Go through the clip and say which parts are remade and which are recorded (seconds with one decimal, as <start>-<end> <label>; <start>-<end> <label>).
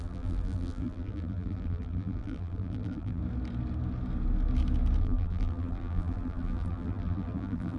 0.0-3.2 remade; 3.2-5.0 recorded; 5.0-7.8 remade